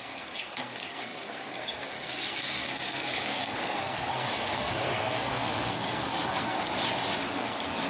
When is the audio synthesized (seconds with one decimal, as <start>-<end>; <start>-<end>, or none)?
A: 0.0-6.6; 7.3-7.9